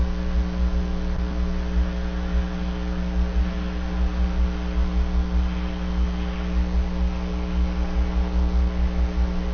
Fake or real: real